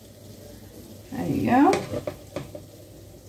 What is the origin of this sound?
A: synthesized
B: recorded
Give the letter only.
B